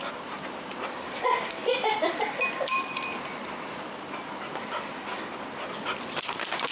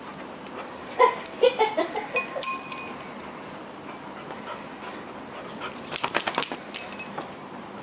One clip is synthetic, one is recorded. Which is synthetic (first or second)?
first